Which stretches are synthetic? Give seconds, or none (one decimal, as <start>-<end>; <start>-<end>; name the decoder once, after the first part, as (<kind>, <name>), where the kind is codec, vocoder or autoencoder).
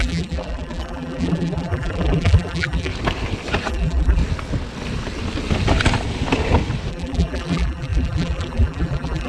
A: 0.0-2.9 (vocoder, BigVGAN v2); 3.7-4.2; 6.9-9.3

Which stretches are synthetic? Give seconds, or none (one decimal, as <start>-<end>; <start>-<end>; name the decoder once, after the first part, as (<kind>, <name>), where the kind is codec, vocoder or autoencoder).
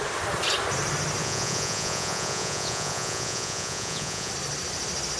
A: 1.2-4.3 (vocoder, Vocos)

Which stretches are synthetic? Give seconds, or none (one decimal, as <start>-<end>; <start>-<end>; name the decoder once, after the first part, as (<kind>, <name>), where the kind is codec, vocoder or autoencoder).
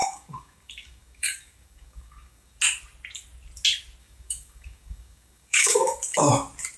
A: 0.0-2.6 (codec, DAC); 4.0-6.3